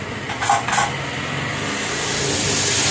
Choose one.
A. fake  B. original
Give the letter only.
B